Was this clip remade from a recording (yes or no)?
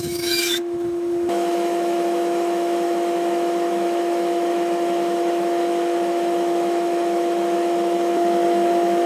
yes